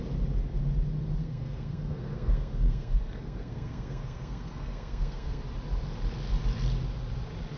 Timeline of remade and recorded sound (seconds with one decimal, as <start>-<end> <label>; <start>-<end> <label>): 0.0-1.2 recorded; 1.2-5.4 remade; 5.4-7.6 recorded